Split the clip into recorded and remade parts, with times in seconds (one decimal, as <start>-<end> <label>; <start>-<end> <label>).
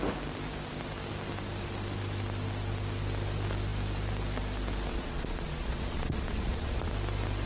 0.0-4.9 recorded; 4.9-6.9 remade; 6.9-7.5 recorded